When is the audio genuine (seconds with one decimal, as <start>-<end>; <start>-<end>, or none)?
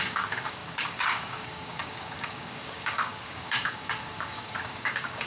none